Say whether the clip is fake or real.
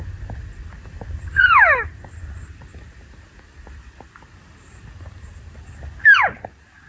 real